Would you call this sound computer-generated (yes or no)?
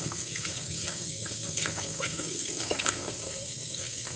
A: yes